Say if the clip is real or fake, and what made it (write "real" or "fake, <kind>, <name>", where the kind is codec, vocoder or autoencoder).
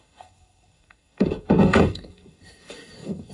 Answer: fake, codec, SNAC